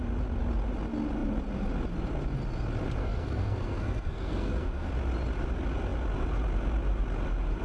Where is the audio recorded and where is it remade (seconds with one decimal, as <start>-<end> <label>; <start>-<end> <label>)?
0.0-3.0 recorded; 3.0-4.9 remade; 4.9-7.6 recorded